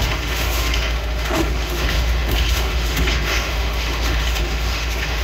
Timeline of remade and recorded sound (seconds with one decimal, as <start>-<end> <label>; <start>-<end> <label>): 0.0-5.2 remade